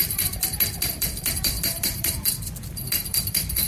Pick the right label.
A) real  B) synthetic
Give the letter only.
B